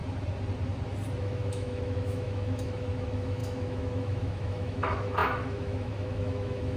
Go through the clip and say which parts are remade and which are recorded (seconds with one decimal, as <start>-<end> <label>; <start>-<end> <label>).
0.0-1.2 recorded; 1.2-6.8 remade